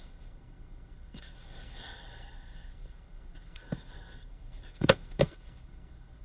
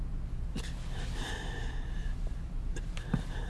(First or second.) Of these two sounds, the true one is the second